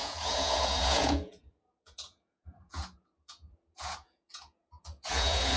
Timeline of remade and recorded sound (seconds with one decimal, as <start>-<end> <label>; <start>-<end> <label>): 0.0-5.6 remade